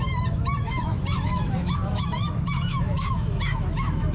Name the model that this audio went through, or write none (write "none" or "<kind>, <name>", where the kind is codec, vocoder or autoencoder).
autoencoder, DAC-VAE